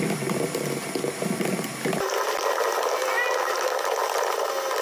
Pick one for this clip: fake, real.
real